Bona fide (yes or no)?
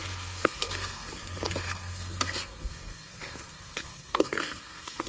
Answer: no